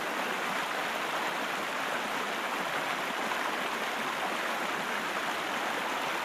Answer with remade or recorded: recorded